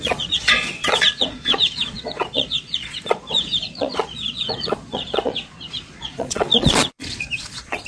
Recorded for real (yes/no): no